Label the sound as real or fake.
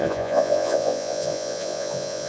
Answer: fake